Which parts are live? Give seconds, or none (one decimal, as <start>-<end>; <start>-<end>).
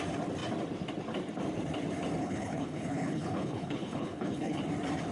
0.0-2.2; 4.6-5.1